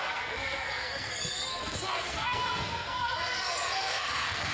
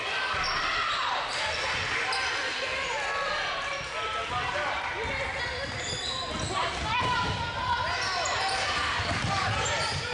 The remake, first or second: first